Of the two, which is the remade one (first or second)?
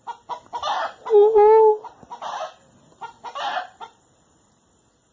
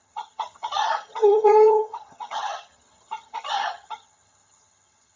second